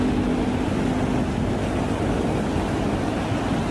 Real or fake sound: real